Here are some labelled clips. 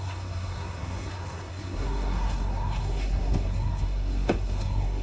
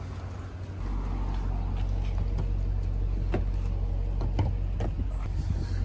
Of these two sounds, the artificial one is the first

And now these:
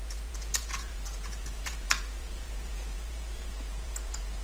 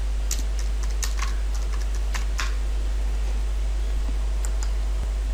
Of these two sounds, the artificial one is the first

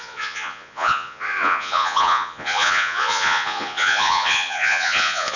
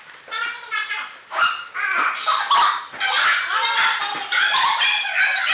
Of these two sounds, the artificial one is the first